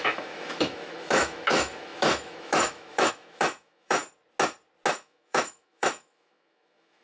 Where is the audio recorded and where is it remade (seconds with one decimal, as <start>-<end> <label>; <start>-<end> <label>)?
0.0-4.0 remade; 4.0-4.9 recorded; 4.9-7.0 remade